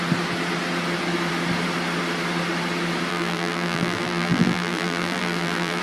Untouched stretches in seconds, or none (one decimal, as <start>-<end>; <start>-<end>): 0.0-3.1